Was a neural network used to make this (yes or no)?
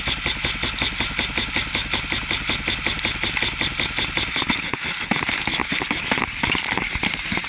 no